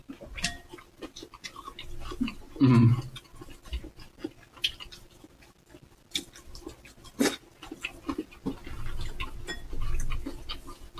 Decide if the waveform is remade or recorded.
recorded